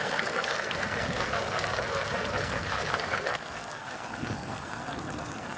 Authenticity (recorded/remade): remade